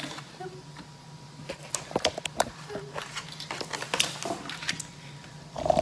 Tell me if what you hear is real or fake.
real